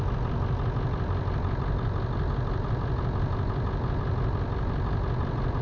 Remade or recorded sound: recorded